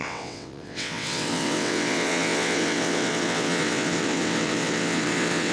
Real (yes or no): no